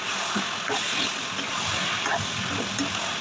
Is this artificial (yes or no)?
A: no